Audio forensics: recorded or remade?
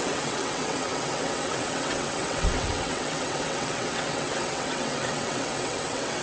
remade